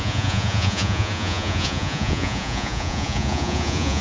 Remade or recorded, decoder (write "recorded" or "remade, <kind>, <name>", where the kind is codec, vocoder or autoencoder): remade, vocoder, Vocos